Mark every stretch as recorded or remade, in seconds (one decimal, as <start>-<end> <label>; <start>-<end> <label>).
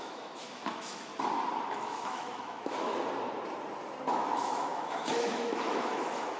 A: 0.0-1.1 remade; 1.1-1.7 recorded; 1.7-2.9 remade; 2.9-4.1 recorded; 4.1-6.4 remade